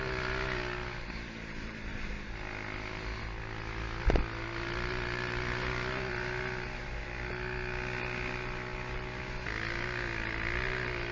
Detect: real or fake real